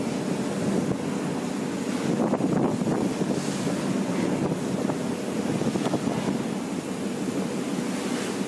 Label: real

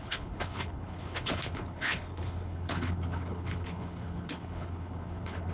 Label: fake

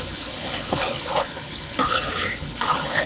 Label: fake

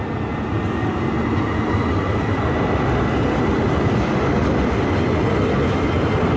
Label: real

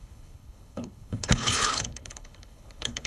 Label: fake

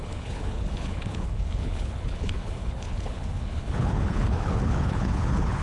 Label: fake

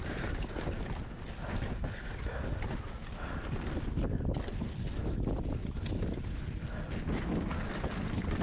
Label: real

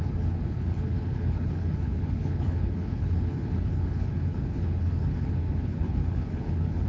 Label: fake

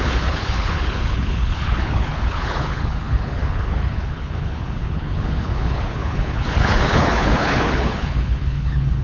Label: fake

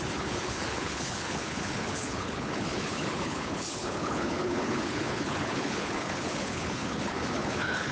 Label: fake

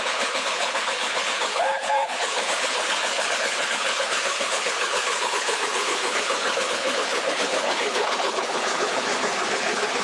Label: fake